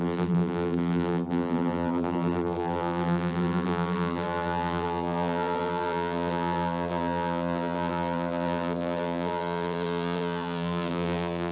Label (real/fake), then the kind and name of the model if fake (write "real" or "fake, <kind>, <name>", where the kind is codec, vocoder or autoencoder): fake, vocoder, BigVGAN v2